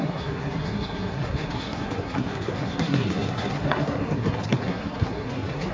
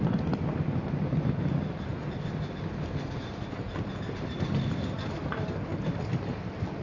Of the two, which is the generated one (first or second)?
first